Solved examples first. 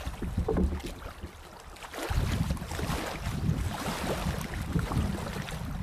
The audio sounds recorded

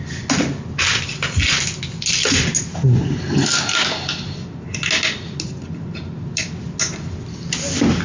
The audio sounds recorded